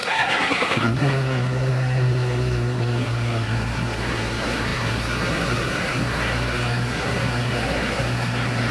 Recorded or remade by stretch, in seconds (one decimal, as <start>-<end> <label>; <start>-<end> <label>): 0.0-8.7 remade